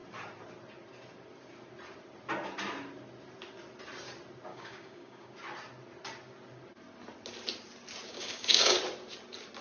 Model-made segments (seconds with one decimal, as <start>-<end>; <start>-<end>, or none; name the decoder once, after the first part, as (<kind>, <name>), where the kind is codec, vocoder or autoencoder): 4.5-5.3 (codec, DAC); 8.1-8.8